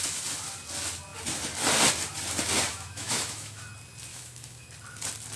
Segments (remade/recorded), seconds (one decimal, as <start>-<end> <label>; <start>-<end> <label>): 0.0-2.7 recorded; 2.7-3.6 remade; 3.6-4.1 recorded; 4.1-4.7 remade; 4.7-5.4 recorded